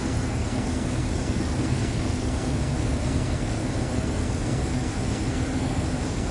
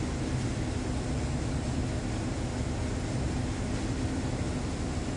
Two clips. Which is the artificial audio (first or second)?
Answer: first